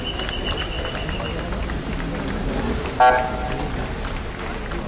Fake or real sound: real